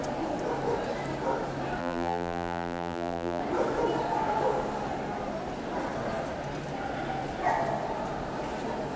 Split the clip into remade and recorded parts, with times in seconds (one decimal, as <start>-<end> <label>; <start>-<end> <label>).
0.0-1.8 recorded; 1.8-3.4 remade; 3.4-9.0 recorded